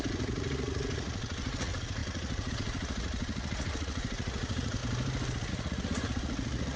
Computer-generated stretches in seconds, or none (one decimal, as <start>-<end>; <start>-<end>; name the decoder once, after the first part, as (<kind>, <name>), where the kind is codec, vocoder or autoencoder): 0.0-4.8 (vocoder, Vocos); 5.5-6.8